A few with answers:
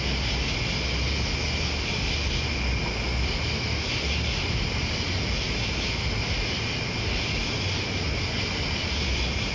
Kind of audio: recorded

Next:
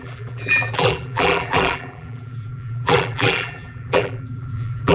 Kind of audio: remade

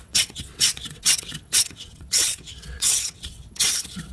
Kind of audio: remade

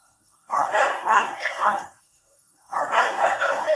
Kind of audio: remade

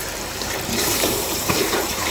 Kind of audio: remade